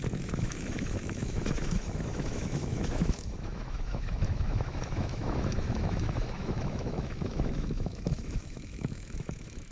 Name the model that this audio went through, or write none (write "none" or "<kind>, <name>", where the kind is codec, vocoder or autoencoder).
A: autoencoder, DAC-VAE